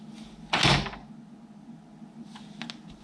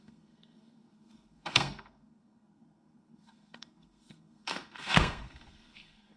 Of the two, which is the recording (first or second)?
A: first